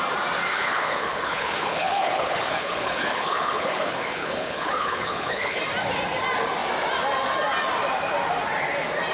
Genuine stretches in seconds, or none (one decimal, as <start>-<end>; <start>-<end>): 0.0-0.5; 5.6-9.1